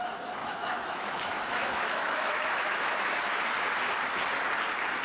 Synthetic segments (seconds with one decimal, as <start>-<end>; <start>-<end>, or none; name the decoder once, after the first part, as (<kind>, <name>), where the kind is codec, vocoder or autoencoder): 0.4-3.4 (autoencoder, DAC-VAE)